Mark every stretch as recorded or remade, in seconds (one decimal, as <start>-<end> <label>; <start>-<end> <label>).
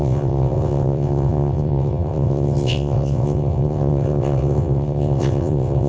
0.0-5.9 remade